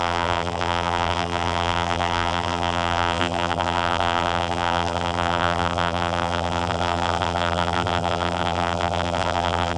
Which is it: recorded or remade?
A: remade